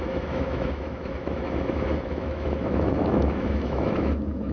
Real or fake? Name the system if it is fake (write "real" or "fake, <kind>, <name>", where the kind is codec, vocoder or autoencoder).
fake, autoencoder, DAC-VAE